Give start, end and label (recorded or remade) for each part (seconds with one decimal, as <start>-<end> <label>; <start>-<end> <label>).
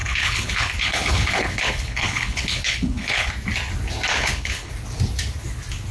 0.0-3.3 remade; 3.3-4.1 recorded; 4.1-4.7 remade; 4.7-5.9 recorded